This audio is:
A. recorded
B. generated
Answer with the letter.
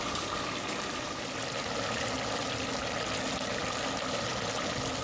A